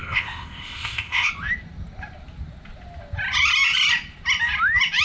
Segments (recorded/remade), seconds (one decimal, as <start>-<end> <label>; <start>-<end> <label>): 0.0-1.3 remade; 1.3-5.0 recorded